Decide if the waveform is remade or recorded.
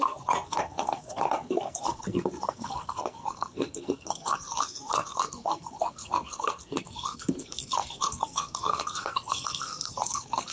remade